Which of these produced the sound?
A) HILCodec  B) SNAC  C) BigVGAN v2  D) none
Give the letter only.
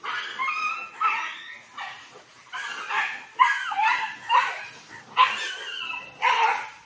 D